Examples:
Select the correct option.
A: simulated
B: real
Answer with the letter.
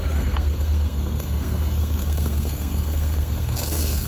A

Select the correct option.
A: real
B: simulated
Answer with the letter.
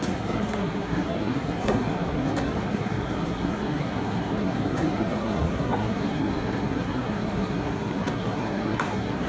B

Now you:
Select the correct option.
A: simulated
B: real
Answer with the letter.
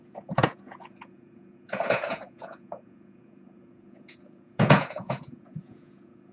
A